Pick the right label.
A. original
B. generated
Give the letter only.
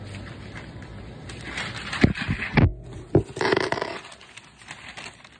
A